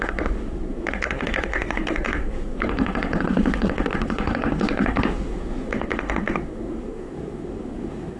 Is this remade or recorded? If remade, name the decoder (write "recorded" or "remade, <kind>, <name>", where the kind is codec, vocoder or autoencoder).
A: remade, codec, SNAC